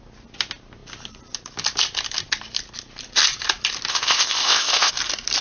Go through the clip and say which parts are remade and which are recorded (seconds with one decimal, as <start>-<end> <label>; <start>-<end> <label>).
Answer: 0.0-3.9 recorded; 3.9-4.9 remade; 4.9-5.4 recorded